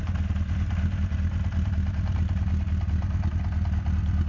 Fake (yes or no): no